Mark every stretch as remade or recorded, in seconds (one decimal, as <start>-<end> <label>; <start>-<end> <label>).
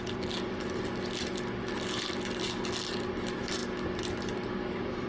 0.0-5.1 recorded